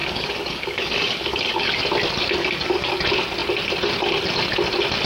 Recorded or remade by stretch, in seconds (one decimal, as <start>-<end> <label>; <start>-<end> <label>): 0.0-1.7 remade; 1.7-2.4 recorded; 2.4-3.0 remade; 3.0-5.1 recorded